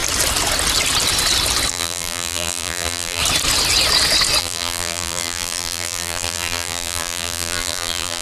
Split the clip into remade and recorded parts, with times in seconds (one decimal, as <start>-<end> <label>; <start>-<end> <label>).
0.0-1.7 recorded; 1.7-3.2 remade; 3.2-4.4 recorded; 4.4-8.2 remade